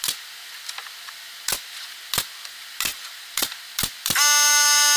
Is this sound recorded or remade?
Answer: recorded